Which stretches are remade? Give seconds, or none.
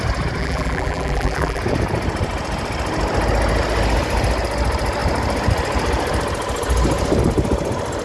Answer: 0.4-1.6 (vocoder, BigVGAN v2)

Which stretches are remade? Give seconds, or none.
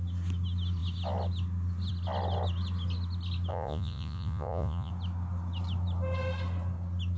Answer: 3.5-4.9 (vocoder, Vocos)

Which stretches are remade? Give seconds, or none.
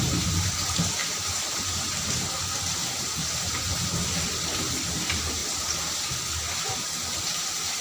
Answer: 0.0-5.4 (vocoder, BigVGAN v2); 6.6-7.8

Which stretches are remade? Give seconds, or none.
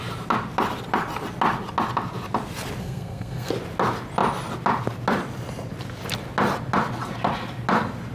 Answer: 2.8-3.5 (codec, SNAC)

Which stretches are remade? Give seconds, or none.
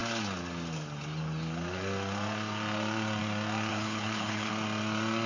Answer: 3.7-4.5 (codec, HILCodec)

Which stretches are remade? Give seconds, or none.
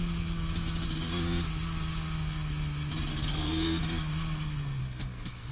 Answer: 3.1-3.8 (codec, SNAC); 4.8-5.5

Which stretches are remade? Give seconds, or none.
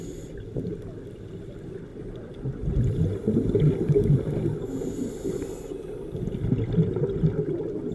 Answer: none